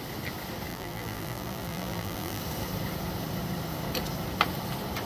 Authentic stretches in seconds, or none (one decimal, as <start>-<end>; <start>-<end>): 0.0-0.7; 2.4-5.1